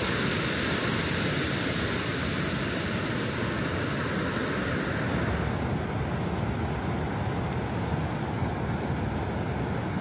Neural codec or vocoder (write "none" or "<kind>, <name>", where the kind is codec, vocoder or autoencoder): none